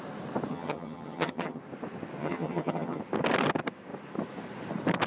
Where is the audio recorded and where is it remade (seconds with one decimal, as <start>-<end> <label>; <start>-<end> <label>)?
0.0-0.5 recorded; 0.5-1.6 remade; 1.6-2.2 recorded; 2.2-3.0 remade; 3.0-5.1 recorded